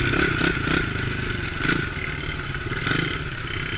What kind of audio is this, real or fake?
real